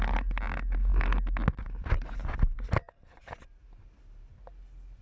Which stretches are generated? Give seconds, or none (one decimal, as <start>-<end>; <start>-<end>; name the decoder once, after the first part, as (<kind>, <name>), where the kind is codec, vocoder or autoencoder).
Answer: none

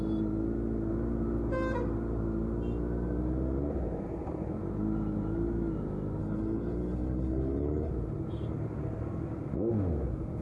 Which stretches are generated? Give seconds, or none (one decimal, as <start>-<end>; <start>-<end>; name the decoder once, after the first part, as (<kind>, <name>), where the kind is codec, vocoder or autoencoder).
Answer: 6.2-7.9 (codec, HILCodec)

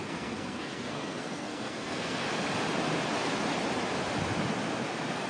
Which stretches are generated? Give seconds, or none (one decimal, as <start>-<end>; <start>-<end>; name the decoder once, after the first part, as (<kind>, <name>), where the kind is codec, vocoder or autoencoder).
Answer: 0.0-2.2 (codec, SNAC)

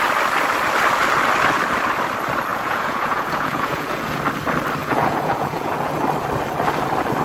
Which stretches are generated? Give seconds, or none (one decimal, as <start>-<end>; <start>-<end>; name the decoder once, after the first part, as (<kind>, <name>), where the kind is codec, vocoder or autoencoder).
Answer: 2.5-4.2 (vocoder, Vocos); 4.8-5.9

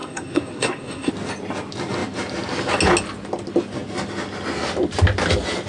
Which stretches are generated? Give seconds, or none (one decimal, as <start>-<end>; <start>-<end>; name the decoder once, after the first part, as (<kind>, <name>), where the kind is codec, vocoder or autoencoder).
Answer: 0.0-1.1 (codec, SNAC)

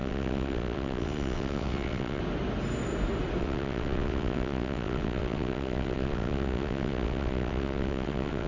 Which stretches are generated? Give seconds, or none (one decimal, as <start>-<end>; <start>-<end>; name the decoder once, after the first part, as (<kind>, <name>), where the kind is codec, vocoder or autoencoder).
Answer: 0.0-2.2 (vocoder, WaveNeXt); 3.4-8.5

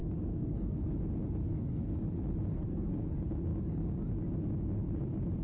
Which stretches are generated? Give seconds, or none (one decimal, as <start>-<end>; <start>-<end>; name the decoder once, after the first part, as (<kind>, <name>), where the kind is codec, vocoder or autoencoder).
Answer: 0.0-0.9 (codec, SNAC); 1.4-2.0; 2.5-3.1

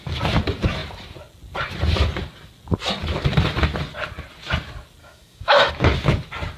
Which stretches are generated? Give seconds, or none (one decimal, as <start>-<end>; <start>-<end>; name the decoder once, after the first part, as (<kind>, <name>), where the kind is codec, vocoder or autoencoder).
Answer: 5.0-5.7 (autoencoder, DAC-VAE)